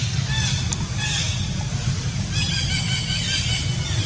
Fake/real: real